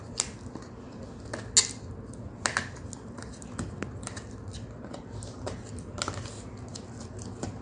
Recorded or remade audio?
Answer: recorded